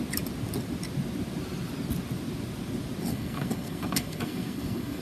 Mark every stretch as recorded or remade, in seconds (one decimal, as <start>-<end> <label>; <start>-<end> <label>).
0.0-3.1 recorded; 3.1-5.0 remade